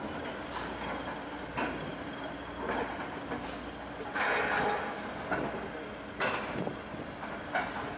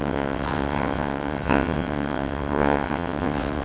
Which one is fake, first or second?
second